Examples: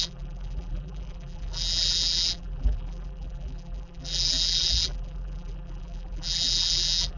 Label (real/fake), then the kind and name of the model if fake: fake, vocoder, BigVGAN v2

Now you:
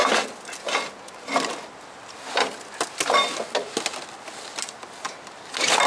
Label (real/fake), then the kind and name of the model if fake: real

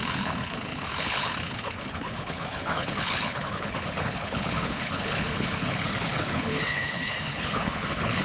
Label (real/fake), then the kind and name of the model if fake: fake, codec, HILCodec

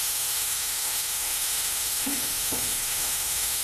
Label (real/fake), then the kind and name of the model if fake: fake, autoencoder, DAC-VAE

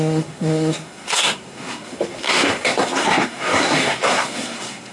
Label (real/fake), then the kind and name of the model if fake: fake, codec, SNAC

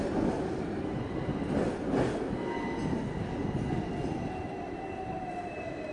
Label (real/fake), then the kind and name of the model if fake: real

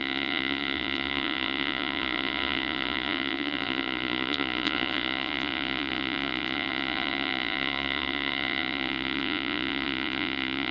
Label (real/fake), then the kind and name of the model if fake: fake, vocoder, Vocos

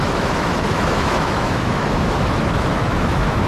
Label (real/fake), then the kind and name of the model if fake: fake, autoencoder, DAC-VAE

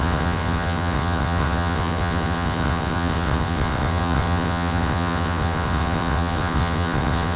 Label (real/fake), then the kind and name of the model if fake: fake, vocoder, WaveNeXt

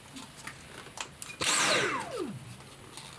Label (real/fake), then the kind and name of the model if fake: real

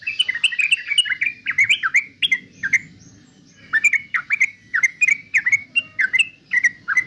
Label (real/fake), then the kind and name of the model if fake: real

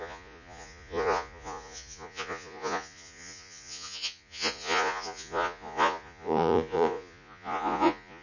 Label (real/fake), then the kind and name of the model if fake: fake, vocoder, Vocos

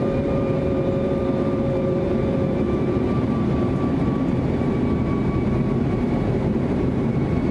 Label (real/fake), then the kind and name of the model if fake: fake, vocoder, BigVGAN v2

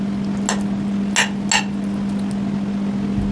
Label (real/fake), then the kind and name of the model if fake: real